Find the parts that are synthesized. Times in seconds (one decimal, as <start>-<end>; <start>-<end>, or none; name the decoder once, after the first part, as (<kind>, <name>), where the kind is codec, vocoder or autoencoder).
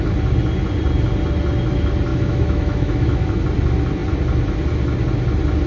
2.1-3.4 (autoencoder, DAC-VAE)